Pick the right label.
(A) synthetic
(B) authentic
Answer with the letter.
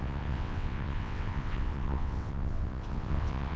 A